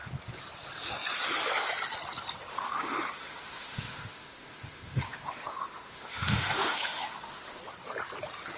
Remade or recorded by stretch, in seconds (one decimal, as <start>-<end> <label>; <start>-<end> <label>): 0.0-2.5 recorded; 2.5-7.6 remade; 7.6-8.6 recorded

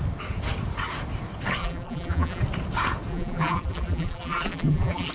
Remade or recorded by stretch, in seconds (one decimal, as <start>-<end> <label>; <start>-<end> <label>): 0.0-1.6 recorded; 1.6-2.4 remade; 2.4-3.1 recorded; 3.1-5.1 remade

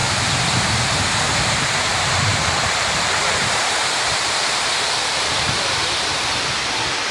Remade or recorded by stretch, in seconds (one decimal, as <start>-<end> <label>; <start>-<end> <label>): 0.0-1.9 recorded; 1.9-6.0 remade; 6.0-7.1 recorded

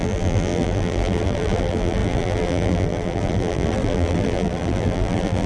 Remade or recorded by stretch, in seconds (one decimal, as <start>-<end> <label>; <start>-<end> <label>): 0.0-5.5 remade